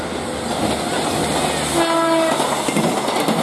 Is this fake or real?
real